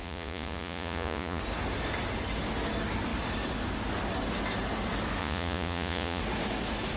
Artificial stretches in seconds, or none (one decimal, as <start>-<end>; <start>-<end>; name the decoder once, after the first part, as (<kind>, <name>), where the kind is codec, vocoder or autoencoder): 0.0-1.4 (vocoder, Vocos); 5.2-6.2